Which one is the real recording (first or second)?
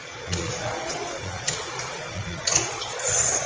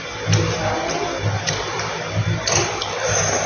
second